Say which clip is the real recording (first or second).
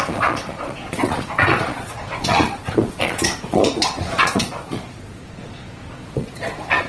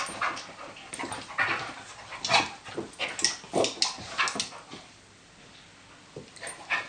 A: second